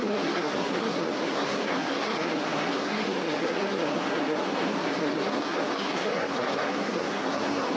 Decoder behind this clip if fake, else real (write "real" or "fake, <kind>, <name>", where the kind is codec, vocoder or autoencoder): fake, codec, SNAC